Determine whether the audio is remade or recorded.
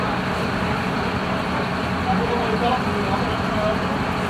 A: recorded